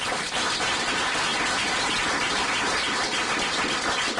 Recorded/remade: recorded